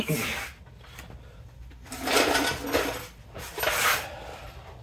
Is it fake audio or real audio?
real